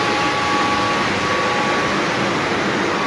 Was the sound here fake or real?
real